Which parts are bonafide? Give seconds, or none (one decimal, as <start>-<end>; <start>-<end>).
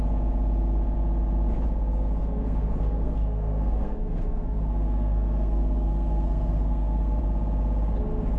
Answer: 0.0-2.2; 7.2-8.4